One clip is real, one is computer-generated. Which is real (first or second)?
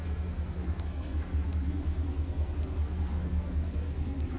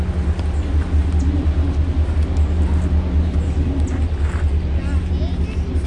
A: second